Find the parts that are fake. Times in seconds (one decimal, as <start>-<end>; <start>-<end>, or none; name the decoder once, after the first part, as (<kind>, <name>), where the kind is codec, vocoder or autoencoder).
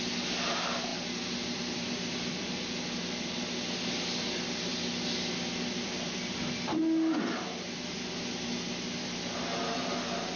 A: none